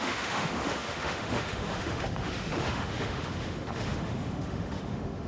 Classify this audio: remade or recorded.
remade